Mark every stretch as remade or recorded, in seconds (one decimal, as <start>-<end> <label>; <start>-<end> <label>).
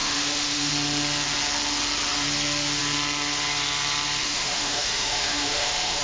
0.0-0.7 remade; 0.7-4.2 recorded; 4.2-6.0 remade